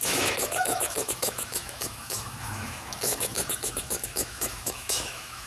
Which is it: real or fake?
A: fake